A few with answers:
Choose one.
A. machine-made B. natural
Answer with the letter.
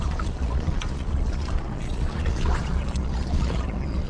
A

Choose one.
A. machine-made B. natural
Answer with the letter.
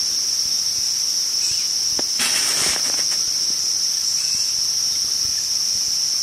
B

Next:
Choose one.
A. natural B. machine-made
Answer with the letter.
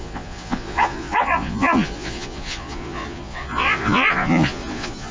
B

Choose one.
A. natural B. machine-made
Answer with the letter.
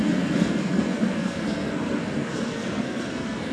B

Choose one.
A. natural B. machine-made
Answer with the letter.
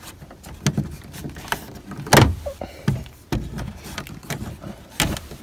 A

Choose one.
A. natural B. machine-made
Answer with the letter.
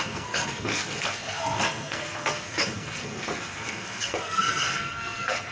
B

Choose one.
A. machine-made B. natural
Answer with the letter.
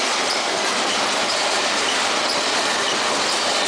B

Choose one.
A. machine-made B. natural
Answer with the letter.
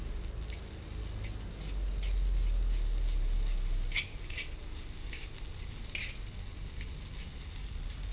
B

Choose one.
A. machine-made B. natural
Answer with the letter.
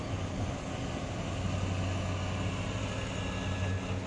B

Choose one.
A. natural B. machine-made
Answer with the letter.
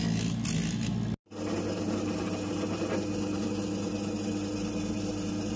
A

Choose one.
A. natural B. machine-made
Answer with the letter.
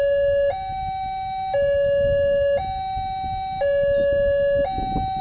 A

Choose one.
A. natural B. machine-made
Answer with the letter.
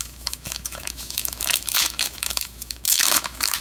B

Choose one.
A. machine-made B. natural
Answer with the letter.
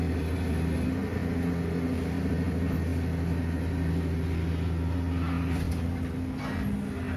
B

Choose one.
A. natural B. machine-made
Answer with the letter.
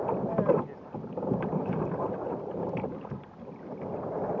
A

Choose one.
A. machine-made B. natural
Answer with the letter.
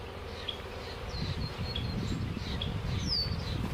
A